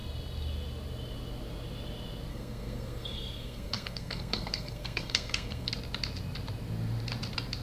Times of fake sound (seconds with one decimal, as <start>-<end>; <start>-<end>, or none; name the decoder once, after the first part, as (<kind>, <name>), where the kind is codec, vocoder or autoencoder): 2.3-5.7 (codec, SNAC)